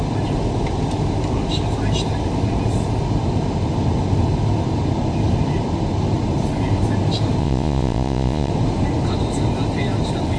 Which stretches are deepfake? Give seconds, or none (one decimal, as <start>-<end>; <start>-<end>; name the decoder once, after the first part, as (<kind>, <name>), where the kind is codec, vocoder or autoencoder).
7.4-8.5 (vocoder, Vocos)

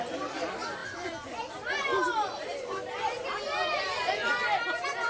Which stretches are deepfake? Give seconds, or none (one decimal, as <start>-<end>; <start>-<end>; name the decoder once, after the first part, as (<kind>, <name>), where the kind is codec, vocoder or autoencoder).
none

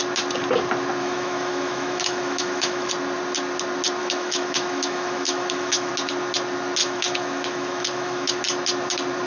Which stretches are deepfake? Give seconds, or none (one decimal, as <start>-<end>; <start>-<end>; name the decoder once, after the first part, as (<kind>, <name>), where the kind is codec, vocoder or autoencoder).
1.0-2.9 (autoencoder, DAC-VAE); 4.0-5.9; 6.8-8.4

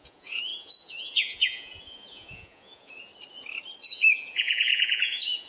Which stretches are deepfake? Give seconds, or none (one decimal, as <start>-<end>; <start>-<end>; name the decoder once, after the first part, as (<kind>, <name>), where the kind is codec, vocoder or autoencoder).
0.0-3.1 (vocoder, Vocos); 3.8-5.5

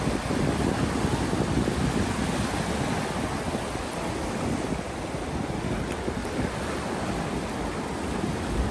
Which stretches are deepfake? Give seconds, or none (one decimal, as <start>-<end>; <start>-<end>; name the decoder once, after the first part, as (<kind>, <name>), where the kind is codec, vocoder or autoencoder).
6.2-7.1 (vocoder, BigVGAN v2)

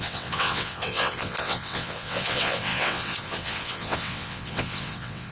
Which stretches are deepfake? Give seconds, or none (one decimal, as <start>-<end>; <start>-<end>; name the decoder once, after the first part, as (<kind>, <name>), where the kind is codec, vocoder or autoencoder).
0.0-5.3 (vocoder, WaveNeXt)

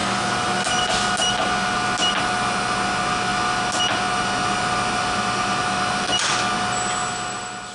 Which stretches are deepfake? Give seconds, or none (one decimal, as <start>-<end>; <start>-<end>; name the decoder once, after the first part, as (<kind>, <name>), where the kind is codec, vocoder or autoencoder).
none

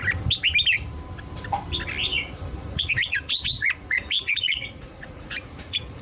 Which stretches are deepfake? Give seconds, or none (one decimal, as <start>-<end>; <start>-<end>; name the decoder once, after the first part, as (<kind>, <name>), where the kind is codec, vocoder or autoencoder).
2.1-6.0 (vocoder, Vocos)